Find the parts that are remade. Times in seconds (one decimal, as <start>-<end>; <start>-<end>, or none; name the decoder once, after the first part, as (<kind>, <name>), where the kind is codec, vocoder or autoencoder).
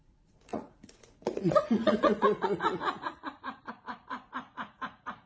0.0-5.3 (vocoder, Vocos)